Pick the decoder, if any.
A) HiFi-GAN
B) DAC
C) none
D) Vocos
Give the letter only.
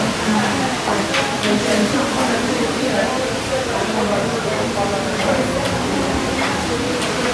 C